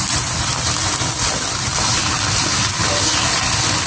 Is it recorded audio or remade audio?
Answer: recorded